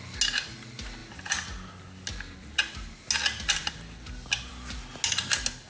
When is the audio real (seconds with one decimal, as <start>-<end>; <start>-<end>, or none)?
0.0-5.7